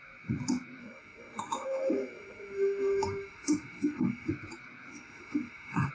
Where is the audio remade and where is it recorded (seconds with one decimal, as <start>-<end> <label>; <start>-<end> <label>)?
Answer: 0.0-0.8 recorded; 0.8-4.3 remade; 4.3-4.9 recorded; 4.9-5.9 remade